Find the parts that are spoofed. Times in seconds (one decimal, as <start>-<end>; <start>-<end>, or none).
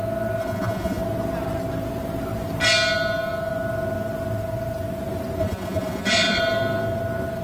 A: 0.4-1.0; 5.4-6.4